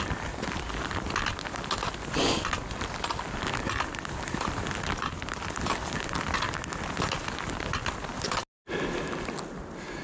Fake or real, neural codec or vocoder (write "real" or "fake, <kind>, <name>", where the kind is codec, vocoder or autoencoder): real